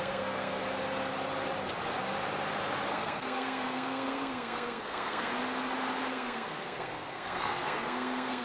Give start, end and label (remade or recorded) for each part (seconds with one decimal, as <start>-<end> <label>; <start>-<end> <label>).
0.0-0.6 remade; 0.6-2.9 recorded; 2.9-5.3 remade; 5.3-6.1 recorded; 6.1-8.4 remade